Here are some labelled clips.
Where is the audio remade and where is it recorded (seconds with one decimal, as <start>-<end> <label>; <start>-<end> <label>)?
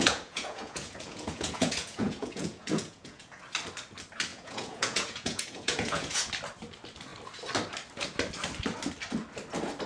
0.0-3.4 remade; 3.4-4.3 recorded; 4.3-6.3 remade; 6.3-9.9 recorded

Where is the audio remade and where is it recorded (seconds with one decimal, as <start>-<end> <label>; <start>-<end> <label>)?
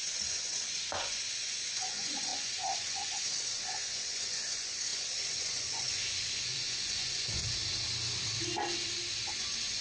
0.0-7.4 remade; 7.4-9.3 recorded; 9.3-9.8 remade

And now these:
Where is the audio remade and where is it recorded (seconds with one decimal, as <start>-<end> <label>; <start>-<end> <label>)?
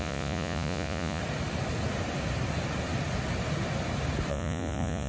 0.0-1.2 remade; 1.2-4.3 recorded; 4.3-5.1 remade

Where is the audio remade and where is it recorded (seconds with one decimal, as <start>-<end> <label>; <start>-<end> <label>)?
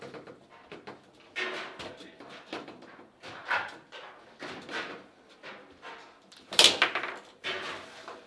0.0-8.3 recorded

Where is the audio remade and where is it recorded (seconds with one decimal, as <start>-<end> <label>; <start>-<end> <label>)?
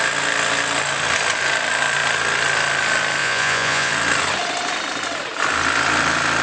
0.0-3.2 recorded; 3.2-3.9 remade; 3.9-6.4 recorded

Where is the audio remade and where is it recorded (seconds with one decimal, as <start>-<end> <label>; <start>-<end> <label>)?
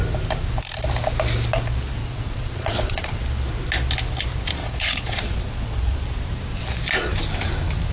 0.0-2.0 recorded; 2.0-3.2 remade; 3.2-4.6 recorded; 4.6-6.0 remade; 6.0-7.9 recorded